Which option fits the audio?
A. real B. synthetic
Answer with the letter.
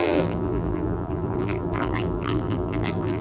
B